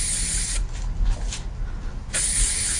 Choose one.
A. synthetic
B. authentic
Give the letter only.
B